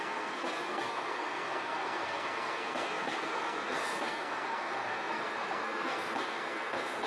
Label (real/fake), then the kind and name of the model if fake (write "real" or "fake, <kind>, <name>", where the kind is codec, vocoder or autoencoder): fake, codec, SNAC